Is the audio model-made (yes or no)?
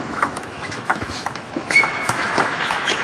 yes